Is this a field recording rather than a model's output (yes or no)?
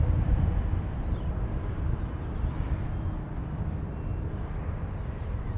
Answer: yes